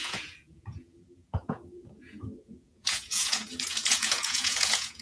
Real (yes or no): no